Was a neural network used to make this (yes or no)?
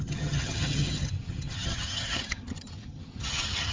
yes